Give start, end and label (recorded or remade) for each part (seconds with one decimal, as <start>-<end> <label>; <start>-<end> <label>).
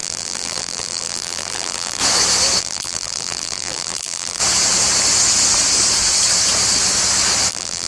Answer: 0.0-2.0 remade; 2.0-2.6 recorded; 2.6-4.4 remade; 4.4-7.5 recorded; 7.5-7.9 remade